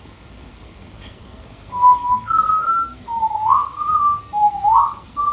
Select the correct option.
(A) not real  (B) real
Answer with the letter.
A